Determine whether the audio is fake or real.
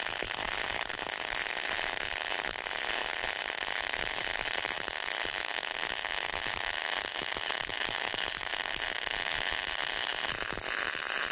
real